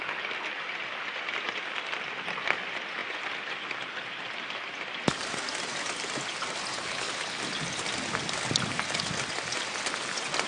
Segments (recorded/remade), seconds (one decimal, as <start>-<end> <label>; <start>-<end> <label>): 0.0-6.7 recorded; 6.7-7.4 remade; 7.4-10.5 recorded